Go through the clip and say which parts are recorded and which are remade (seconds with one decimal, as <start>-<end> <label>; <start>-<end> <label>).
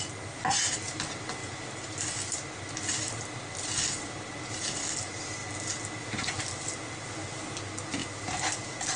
0.0-9.0 recorded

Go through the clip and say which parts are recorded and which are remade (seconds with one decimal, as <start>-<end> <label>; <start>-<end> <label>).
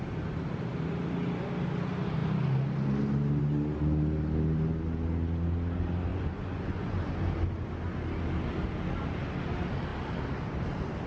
0.0-6.1 recorded; 6.1-7.1 remade; 7.1-11.1 recorded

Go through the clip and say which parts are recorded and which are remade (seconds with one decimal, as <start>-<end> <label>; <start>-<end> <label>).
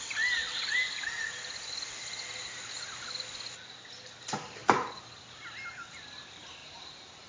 0.0-4.6 recorded; 4.6-5.2 remade; 5.2-6.6 recorded; 6.6-7.3 remade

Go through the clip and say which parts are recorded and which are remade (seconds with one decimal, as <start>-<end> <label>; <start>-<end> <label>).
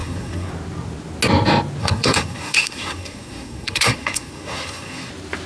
0.0-0.5 remade; 0.5-1.8 recorded; 1.8-5.1 remade; 5.1-5.5 recorded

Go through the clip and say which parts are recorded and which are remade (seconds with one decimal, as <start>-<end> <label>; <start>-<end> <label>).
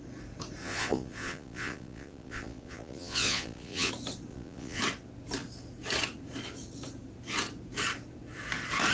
0.0-0.6 recorded; 0.6-3.9 remade; 3.9-4.3 recorded; 4.3-4.8 remade; 4.8-8.9 recorded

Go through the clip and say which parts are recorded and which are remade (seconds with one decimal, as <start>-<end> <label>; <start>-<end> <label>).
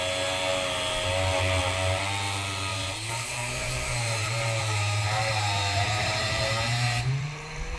0.0-2.7 recorded; 2.7-7.8 remade